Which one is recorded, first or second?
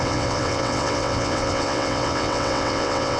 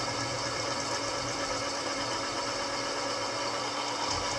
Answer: second